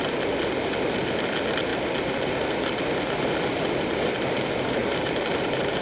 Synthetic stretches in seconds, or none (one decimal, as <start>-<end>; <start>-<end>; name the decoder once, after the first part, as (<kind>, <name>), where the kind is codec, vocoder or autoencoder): 4.8-5.8 (vocoder, BigVGAN v2)